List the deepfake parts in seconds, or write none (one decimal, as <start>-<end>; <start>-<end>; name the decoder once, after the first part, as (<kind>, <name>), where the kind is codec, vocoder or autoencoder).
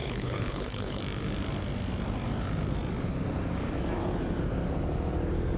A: 0.0-1.0 (codec, HILCodec)